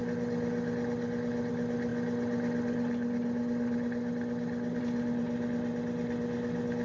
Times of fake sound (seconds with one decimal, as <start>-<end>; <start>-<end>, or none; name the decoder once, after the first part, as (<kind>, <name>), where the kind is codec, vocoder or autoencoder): none